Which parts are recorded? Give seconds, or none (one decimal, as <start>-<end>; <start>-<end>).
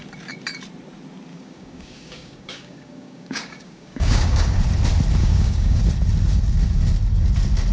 0.0-1.3; 4.6-5.2; 5.8-7.7